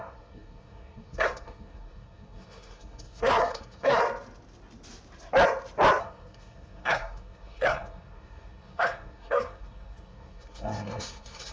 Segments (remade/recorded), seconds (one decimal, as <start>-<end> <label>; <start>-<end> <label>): 0.0-4.0 remade; 4.0-6.0 recorded; 6.0-11.5 remade